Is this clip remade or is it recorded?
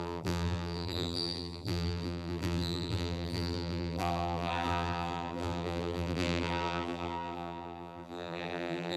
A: remade